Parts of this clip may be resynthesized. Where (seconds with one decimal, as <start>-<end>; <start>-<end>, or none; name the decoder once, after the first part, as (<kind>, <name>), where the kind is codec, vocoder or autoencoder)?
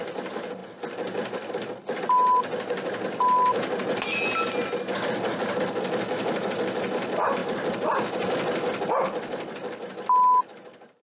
7.4-9.5 (vocoder, BigVGAN v2)